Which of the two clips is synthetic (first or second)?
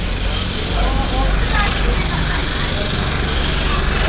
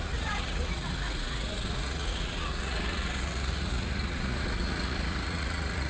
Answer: second